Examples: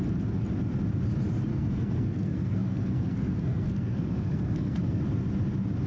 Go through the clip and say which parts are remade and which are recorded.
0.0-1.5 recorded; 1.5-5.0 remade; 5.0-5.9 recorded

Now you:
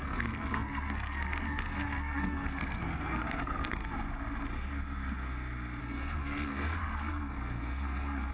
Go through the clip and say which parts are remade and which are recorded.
0.0-3.9 remade; 3.9-5.8 recorded; 5.8-8.3 remade

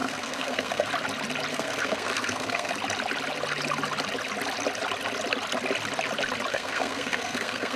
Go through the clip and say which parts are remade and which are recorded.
0.0-0.9 remade; 0.9-1.5 recorded; 1.5-2.7 remade; 2.7-6.5 recorded; 6.5-7.8 remade

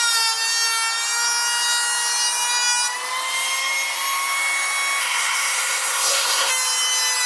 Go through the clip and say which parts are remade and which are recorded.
0.0-5.0 recorded; 5.0-6.5 remade; 6.5-7.3 recorded

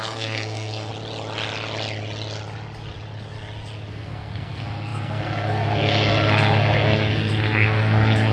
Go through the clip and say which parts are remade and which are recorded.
0.0-0.9 remade; 0.9-3.9 recorded; 3.9-8.3 remade